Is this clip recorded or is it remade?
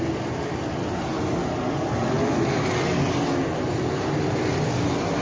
recorded